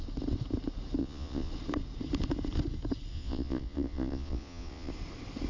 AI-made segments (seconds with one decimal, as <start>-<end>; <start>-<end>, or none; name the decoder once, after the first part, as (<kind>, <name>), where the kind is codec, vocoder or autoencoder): 1.0-1.5 (vocoder, Vocos); 3.1-4.9